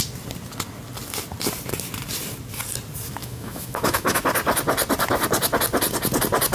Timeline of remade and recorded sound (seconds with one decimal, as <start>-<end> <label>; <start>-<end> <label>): 0.0-3.2 recorded; 3.2-4.2 remade; 4.2-6.5 recorded